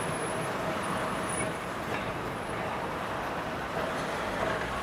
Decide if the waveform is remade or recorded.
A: remade